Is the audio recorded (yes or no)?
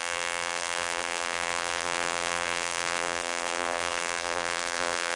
no